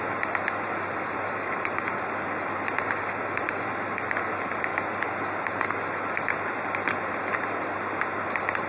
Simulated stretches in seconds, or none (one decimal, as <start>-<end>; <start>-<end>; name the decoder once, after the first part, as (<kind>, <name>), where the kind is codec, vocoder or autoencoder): none